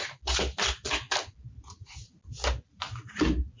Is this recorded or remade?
recorded